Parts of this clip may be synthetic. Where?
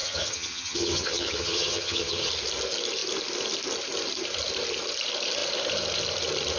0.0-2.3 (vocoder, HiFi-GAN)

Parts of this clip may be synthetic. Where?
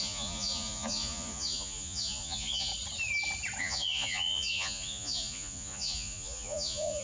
0.0-2.7 (vocoder, Vocos); 3.6-7.0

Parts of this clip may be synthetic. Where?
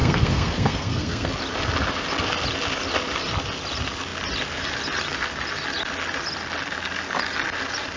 0.0-1.3 (codec, SNAC)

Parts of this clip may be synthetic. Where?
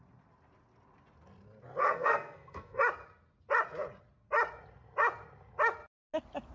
1.8-2.8 (codec, SNAC)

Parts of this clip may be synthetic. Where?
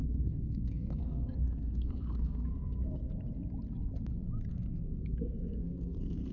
0.0-3.0 (codec, SNAC); 4.5-6.3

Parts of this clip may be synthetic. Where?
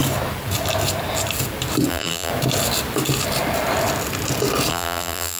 1.9-2.3 (vocoder, BigVGAN v2); 4.7-5.4